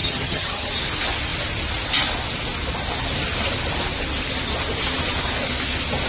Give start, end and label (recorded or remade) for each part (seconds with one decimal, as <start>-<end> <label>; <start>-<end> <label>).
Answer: 0.0-0.7 remade; 0.7-6.1 recorded